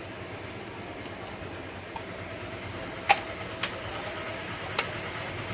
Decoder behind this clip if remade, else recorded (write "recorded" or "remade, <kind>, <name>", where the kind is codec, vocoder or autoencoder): recorded